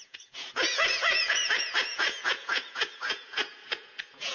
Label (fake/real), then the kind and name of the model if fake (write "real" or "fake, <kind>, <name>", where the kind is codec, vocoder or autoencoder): fake, vocoder, Vocos